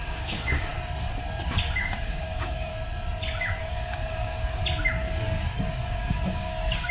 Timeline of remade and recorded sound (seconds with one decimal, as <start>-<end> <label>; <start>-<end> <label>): 0.0-0.7 remade; 0.7-1.8 recorded; 1.8-2.7 remade; 2.7-3.6 recorded; 3.6-4.6 remade; 4.6-5.8 recorded; 5.8-6.9 remade